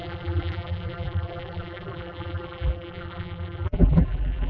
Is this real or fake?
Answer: fake